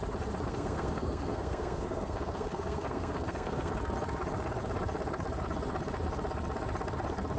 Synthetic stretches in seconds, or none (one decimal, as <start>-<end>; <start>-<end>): 0.5-3.7